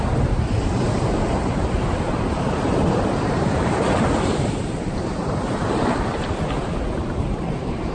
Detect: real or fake fake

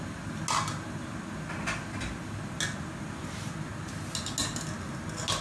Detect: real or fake real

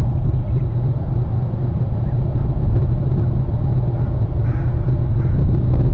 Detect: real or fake real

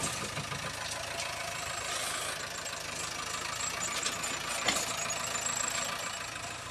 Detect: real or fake real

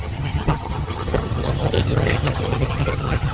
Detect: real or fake fake